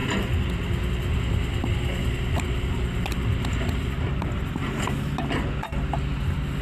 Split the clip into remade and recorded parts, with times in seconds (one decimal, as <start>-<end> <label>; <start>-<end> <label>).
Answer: 0.0-6.6 recorded